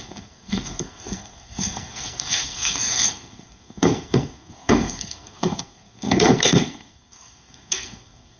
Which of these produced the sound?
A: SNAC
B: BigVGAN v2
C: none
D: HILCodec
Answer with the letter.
A